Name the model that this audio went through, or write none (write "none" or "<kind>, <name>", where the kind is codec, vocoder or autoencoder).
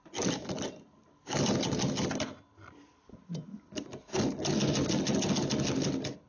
none